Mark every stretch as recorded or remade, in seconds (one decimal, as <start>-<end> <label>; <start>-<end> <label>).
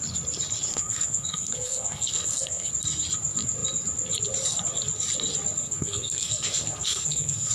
0.0-0.7 recorded; 0.7-2.7 remade; 2.7-5.6 recorded; 5.6-7.5 remade